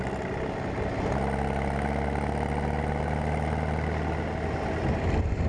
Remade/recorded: recorded